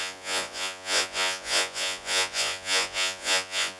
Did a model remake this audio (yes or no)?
yes